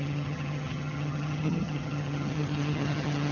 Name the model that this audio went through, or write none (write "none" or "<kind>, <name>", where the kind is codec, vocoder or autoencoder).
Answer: vocoder, HiFi-GAN